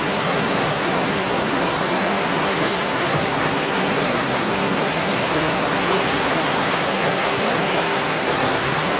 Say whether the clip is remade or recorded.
remade